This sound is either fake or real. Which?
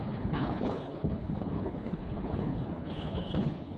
fake